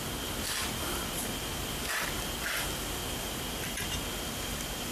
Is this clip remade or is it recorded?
recorded